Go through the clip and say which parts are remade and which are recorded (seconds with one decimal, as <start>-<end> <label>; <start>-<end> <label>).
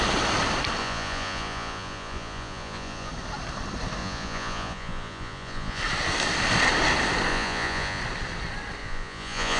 0.0-0.8 recorded; 0.8-3.1 remade; 3.1-4.0 recorded; 4.0-5.8 remade; 5.8-7.3 recorded; 7.3-8.0 remade; 8.0-8.8 recorded; 8.8-9.6 remade